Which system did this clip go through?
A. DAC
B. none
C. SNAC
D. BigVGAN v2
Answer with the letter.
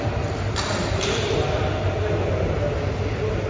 B